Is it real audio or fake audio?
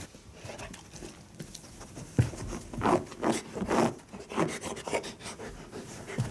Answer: real